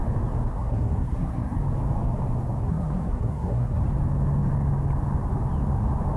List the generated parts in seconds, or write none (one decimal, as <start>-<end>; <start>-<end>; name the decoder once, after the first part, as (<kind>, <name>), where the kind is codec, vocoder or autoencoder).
0.5-1.6 (codec, SNAC); 2.6-3.8